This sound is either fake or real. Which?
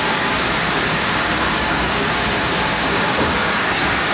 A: fake